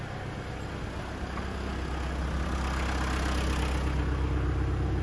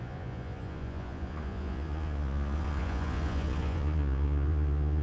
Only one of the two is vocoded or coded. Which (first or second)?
second